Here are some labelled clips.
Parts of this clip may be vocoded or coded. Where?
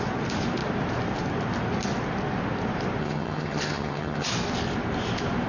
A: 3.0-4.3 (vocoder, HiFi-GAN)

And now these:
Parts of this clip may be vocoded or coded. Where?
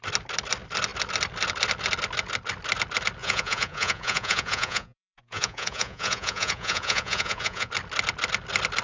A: 3.2-7.7 (vocoder, Vocos)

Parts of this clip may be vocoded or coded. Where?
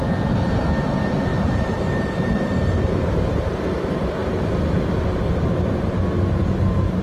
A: 1.3-3.4 (vocoder, BigVGAN v2)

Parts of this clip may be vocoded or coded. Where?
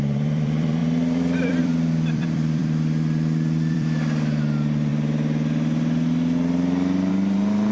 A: 0.0-4.9 (vocoder, BigVGAN v2); 7.1-7.7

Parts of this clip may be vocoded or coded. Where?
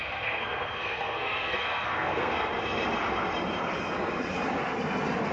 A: 0.0-2.5 (codec, SNAC)